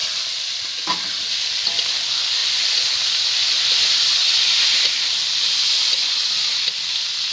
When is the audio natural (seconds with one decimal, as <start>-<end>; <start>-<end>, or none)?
0.0-7.3